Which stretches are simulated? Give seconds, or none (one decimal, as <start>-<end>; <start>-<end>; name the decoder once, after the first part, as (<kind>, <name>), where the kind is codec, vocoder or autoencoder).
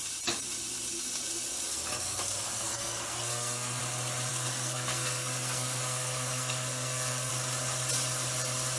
1.7-3.8 (codec, SNAC); 4.3-7.3